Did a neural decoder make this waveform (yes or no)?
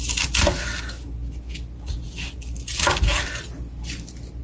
no